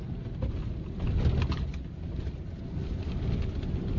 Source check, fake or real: real